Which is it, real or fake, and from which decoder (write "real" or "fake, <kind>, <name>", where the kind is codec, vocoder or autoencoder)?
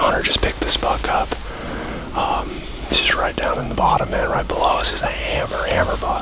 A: real